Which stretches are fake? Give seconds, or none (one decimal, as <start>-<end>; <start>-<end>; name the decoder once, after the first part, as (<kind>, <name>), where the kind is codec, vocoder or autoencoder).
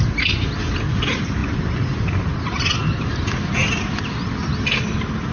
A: none